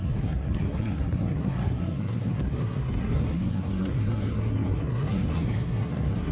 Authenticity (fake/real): fake